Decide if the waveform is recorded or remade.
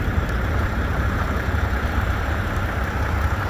remade